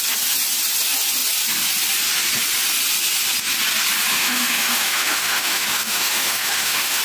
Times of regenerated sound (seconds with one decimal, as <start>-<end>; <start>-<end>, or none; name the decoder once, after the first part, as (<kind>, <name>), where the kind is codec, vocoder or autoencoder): 4.1-7.0 (autoencoder, DAC-VAE)